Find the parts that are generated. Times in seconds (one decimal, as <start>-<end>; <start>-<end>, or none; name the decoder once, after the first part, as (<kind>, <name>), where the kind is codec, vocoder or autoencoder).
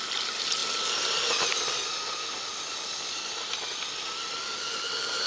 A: none